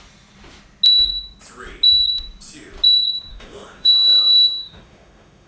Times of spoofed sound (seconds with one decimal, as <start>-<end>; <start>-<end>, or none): 3.3-5.5